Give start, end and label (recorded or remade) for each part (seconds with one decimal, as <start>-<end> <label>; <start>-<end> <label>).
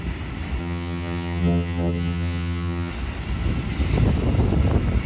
0.0-0.6 recorded; 0.6-2.9 remade; 2.9-5.1 recorded